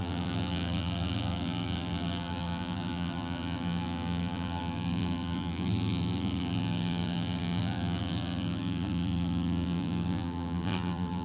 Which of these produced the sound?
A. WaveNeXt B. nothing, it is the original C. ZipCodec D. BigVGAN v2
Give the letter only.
D